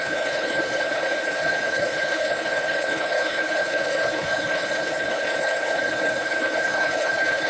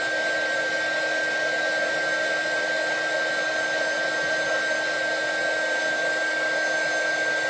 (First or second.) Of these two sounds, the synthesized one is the first